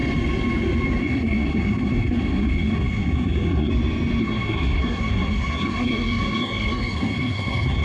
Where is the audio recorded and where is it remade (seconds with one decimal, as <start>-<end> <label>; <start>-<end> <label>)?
0.0-1.0 recorded; 1.0-3.7 remade; 3.7-4.2 recorded; 4.2-7.8 remade